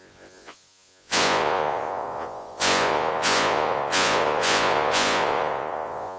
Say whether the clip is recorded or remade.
remade